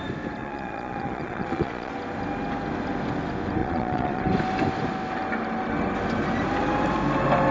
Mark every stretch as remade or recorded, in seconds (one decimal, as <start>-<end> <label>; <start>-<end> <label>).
0.0-0.4 recorded; 0.4-1.9 remade; 1.9-3.6 recorded; 3.6-4.2 remade; 4.2-7.5 recorded